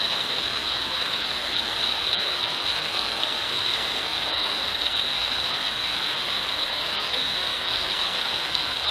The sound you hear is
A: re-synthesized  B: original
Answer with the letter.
A